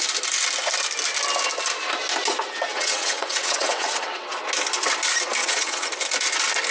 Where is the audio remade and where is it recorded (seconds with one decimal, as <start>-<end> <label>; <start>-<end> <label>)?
0.0-2.7 recorded; 2.7-4.3 remade; 4.3-5.4 recorded; 5.4-5.9 remade; 5.9-6.7 recorded